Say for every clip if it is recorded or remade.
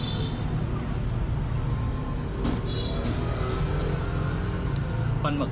recorded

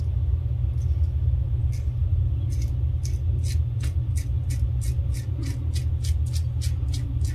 recorded